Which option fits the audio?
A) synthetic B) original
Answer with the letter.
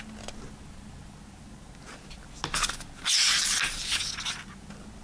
B